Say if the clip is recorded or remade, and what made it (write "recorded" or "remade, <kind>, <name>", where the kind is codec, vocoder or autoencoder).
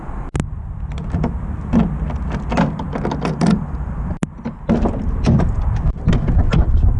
recorded